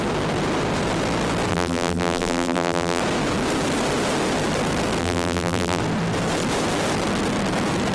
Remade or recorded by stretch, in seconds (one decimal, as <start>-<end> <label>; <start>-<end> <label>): 0.0-1.5 recorded; 1.5-3.0 remade; 3.0-5.0 recorded; 5.0-5.8 remade; 5.8-7.9 recorded